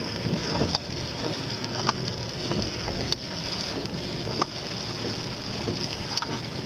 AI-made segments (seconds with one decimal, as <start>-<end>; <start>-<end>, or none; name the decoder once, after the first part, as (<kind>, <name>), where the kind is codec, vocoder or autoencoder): 0.0-4.5 (codec, SNAC); 5.8-6.7